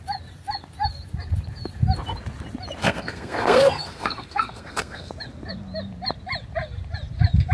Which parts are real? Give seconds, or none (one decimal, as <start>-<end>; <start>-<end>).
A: 0.0-2.8; 5.1-7.5